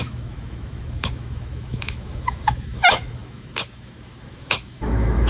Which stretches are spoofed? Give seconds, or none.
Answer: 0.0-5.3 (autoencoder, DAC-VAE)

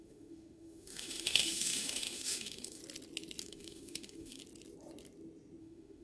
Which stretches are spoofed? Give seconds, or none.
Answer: 0.0-2.8 (autoencoder, DAC-VAE); 3.4-4.4; 5.6-6.0